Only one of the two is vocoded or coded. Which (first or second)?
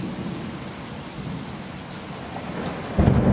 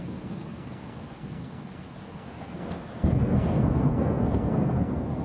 second